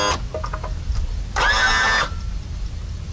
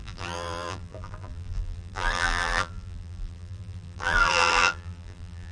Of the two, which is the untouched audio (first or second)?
first